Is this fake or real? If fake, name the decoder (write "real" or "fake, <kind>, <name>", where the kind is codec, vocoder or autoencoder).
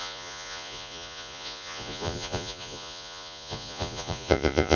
fake, vocoder, Vocos